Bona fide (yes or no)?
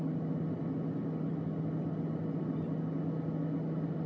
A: yes